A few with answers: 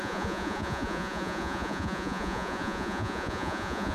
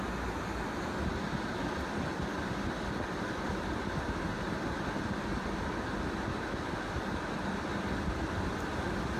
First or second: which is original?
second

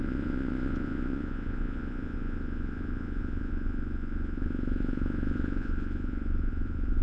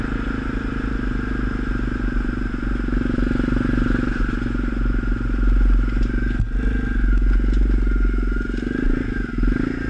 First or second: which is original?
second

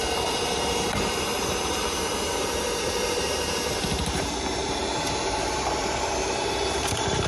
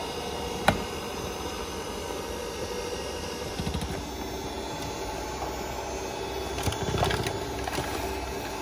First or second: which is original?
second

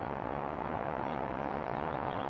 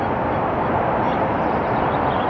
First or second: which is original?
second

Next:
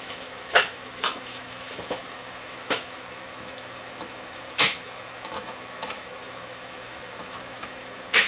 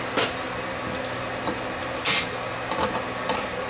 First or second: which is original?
second